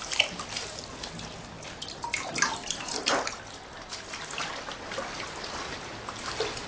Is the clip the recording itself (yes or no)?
yes